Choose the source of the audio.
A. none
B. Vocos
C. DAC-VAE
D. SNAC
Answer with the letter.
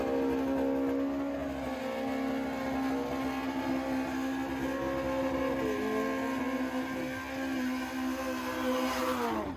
A